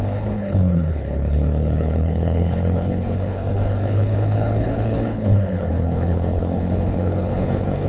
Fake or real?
fake